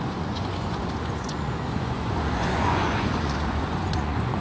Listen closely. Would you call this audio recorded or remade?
remade